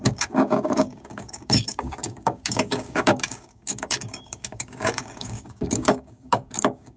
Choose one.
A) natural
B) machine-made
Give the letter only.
B